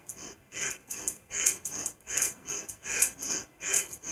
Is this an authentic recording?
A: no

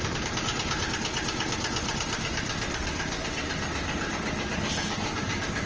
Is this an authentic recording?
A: yes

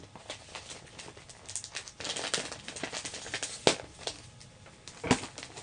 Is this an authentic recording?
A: yes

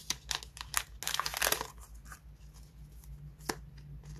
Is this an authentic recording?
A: yes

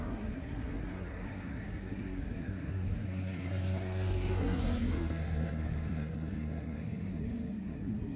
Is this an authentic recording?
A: no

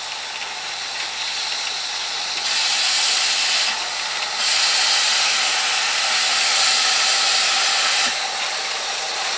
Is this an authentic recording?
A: yes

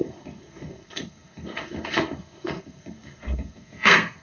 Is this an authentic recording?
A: no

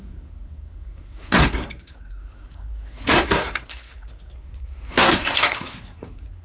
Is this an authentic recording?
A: no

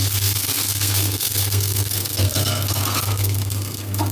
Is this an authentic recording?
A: no